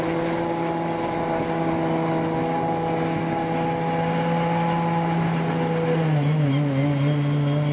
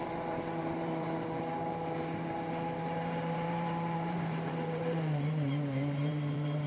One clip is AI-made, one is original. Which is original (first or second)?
first